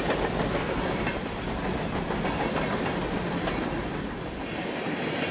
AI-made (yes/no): no